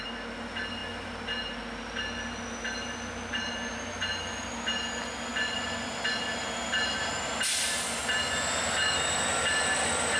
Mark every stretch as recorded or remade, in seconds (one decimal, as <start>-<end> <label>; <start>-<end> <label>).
0.0-10.2 recorded